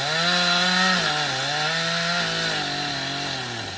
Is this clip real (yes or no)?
yes